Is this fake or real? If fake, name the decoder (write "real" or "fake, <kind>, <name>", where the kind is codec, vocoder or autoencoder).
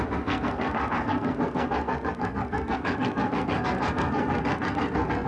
fake, codec, SNAC